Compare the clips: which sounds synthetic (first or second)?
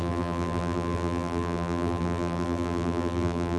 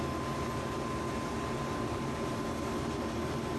first